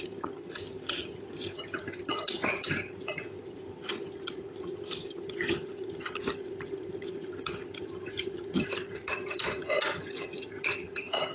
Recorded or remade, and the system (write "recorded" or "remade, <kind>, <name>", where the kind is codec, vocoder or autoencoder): remade, vocoder, HiFi-GAN